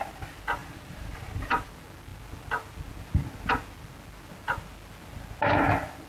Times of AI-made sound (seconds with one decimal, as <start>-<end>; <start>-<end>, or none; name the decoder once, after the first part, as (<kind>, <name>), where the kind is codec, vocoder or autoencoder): 0.6-1.7 (vocoder, BigVGAN v2)